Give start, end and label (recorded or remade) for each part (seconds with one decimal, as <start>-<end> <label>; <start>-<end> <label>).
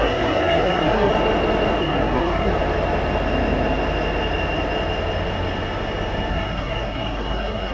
0.0-1.1 remade; 1.1-1.8 recorded; 1.8-2.5 remade; 2.5-6.3 recorded; 6.3-7.7 remade